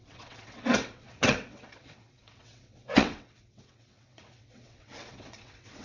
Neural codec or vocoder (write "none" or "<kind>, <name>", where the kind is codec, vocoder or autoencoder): vocoder, WaveNeXt